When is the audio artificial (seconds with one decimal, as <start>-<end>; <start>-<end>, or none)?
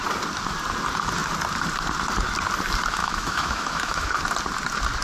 3.0-4.2